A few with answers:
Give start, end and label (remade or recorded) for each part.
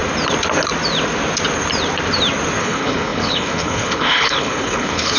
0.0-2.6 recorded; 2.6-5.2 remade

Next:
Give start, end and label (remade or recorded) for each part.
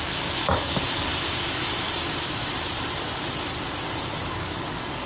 0.0-1.1 remade; 1.1-4.1 recorded; 4.1-5.1 remade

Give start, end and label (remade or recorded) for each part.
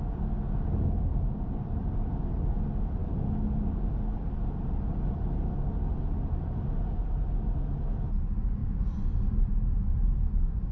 0.0-1.1 recorded; 1.1-1.7 remade; 1.7-8.6 recorded; 8.6-10.1 remade; 10.1-10.7 recorded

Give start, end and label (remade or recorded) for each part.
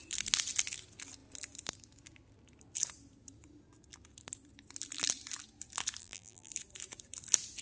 0.0-6.0 recorded; 6.0-6.5 remade; 6.5-7.6 recorded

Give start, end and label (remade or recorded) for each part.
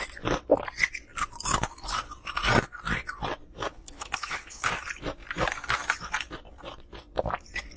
0.0-3.7 recorded; 3.7-4.7 remade; 4.7-7.8 recorded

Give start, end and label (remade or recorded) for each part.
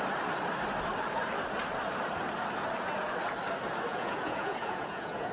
0.0-3.9 recorded; 3.9-5.3 remade